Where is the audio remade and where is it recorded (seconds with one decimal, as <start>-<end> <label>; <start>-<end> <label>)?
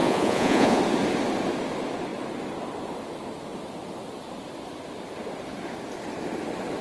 0.0-0.8 remade; 0.8-6.8 recorded